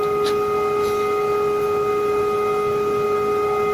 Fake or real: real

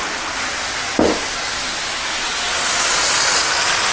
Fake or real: real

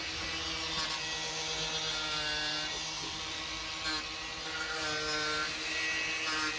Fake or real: real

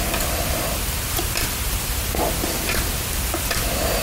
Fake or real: real